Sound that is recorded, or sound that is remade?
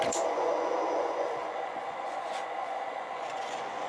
remade